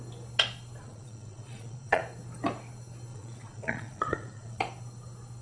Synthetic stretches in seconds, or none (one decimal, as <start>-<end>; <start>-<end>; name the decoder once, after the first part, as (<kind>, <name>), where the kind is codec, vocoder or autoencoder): 0.8-2.0 (vocoder, Vocos); 3.1-4.6